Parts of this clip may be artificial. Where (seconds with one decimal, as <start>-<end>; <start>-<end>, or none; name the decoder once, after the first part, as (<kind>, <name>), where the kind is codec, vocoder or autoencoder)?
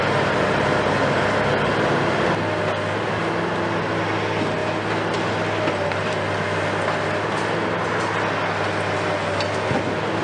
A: none